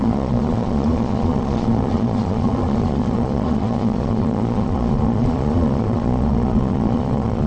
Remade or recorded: remade